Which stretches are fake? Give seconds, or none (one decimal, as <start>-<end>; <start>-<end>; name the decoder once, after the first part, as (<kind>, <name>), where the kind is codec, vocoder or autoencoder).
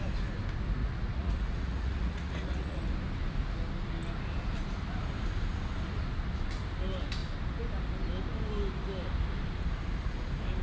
0.8-2.8 (vocoder, Vocos)